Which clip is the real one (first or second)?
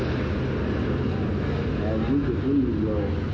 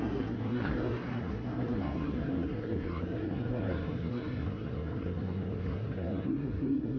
first